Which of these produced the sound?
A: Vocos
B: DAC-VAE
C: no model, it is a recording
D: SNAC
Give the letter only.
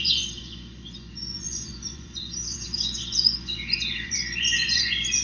A